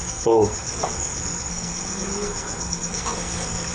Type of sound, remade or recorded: remade